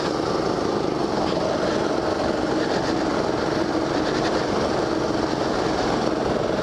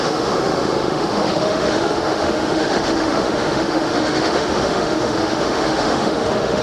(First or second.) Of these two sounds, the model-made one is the second